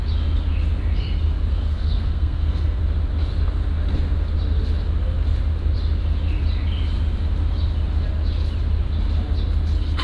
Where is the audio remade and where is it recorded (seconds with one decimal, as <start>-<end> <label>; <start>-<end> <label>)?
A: 0.0-1.5 recorded; 1.5-2.8 remade; 2.8-10.0 recorded